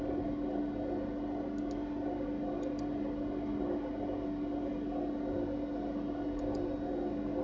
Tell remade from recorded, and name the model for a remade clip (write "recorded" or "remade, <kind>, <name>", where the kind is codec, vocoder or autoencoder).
recorded